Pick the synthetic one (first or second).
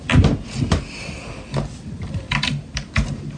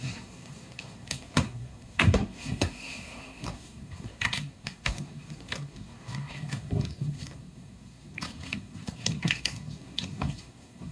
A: second